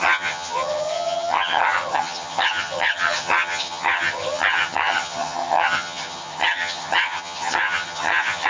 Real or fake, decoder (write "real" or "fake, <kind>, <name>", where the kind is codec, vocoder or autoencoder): fake, vocoder, HiFi-GAN